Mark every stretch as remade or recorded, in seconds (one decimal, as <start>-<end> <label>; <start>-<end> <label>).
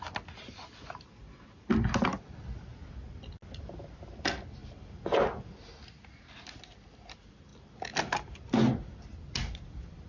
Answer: 0.0-10.1 recorded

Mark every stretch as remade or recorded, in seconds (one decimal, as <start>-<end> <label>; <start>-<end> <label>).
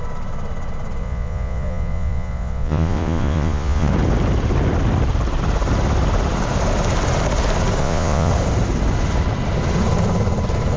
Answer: 0.0-1.0 recorded; 1.0-3.9 remade; 3.9-7.8 recorded; 7.8-8.3 remade; 8.3-10.8 recorded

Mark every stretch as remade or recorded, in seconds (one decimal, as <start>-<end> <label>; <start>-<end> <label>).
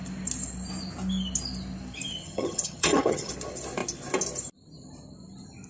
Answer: 0.0-2.2 recorded; 2.2-3.3 remade; 3.3-5.7 recorded